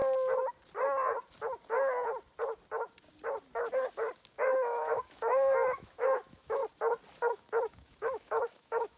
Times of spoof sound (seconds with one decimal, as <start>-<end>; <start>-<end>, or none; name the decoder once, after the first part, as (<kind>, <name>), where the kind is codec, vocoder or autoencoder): 4.3-6.6 (autoencoder, DAC-VAE); 7.3-9.0